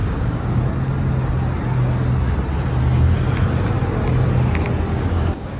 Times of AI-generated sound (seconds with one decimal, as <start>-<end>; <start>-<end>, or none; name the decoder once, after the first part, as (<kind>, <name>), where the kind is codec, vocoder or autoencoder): 0.0-0.6 (codec, DAC); 4.9-5.6